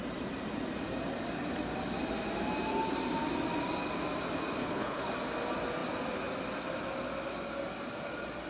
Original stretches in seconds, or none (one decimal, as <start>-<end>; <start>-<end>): 0.0-4.6; 5.1-8.5